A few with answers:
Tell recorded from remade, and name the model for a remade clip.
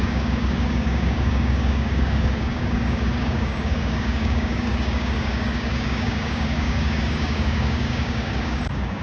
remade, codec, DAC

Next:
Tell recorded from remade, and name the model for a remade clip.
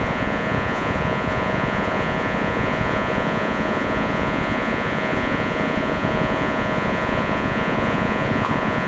remade, vocoder, Vocos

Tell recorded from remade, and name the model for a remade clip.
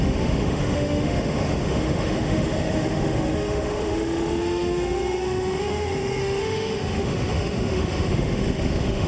remade, autoencoder, DAC-VAE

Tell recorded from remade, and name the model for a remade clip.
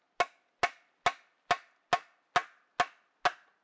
recorded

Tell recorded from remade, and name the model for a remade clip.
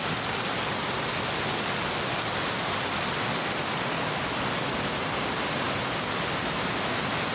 recorded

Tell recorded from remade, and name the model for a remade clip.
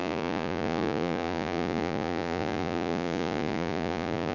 remade, vocoder, Vocos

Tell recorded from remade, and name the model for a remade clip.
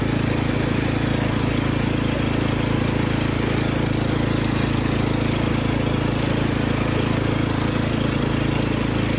recorded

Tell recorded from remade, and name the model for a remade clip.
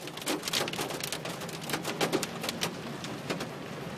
recorded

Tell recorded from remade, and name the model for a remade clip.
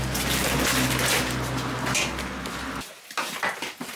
recorded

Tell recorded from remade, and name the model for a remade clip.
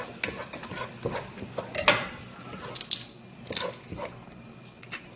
recorded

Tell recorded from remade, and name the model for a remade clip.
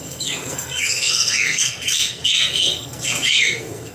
remade, codec, SNAC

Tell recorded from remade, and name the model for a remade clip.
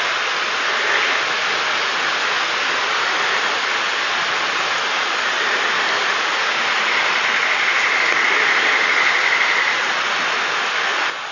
recorded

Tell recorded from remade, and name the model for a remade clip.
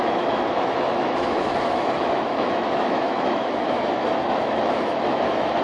remade, autoencoder, DAC-VAE